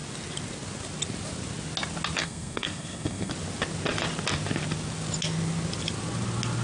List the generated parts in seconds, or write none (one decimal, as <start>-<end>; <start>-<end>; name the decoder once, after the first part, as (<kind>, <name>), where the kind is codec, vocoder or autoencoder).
2.2-3.3 (codec, SNAC)